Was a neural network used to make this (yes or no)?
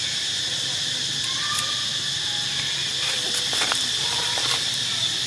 no